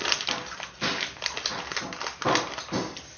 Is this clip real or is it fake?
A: real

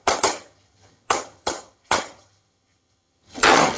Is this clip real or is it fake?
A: fake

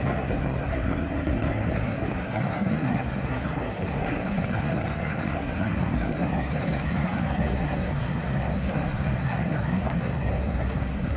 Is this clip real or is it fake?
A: fake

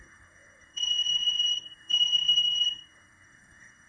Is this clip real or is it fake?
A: fake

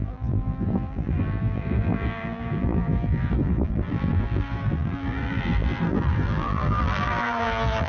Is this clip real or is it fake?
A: fake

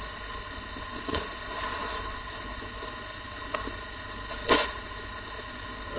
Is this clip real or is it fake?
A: fake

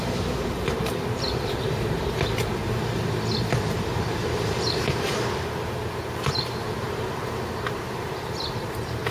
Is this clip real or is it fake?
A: fake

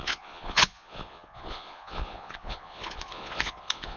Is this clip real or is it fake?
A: fake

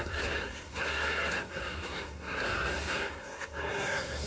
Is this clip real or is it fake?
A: fake